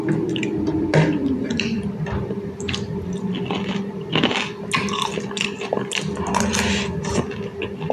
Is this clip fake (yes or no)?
no